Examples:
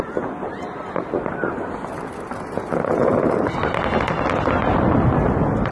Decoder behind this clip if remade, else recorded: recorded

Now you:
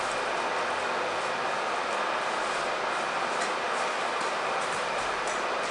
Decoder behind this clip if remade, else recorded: recorded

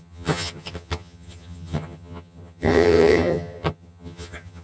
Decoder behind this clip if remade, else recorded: remade, vocoder, HiFi-GAN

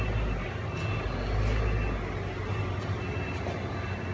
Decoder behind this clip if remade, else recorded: recorded